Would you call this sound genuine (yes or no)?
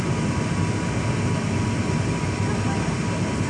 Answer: yes